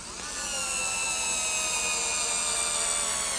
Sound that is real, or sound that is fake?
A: real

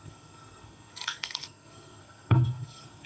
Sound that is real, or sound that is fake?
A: fake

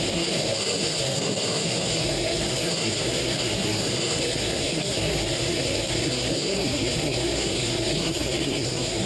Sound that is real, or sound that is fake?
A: fake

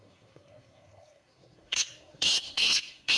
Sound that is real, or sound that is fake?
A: fake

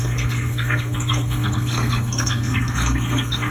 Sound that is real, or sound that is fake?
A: fake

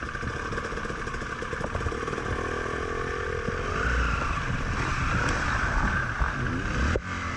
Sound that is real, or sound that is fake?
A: real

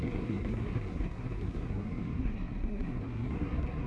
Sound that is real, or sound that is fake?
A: fake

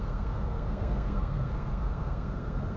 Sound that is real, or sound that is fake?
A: fake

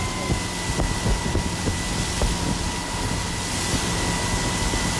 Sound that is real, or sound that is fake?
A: real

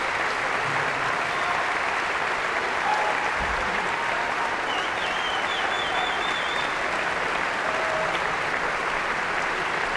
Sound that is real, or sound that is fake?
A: real